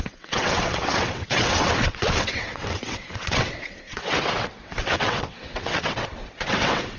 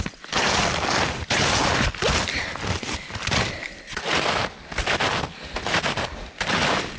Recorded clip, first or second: second